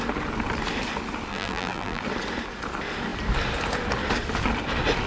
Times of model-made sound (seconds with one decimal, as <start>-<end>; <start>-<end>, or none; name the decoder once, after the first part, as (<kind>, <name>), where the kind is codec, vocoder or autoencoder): 1.3-2.0 (vocoder, BigVGAN v2)